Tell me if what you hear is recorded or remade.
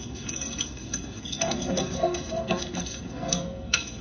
remade